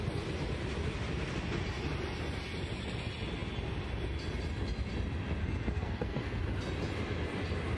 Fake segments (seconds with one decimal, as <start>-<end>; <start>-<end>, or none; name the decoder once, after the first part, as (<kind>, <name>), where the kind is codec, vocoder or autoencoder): 5.4-6.4 (codec, SNAC)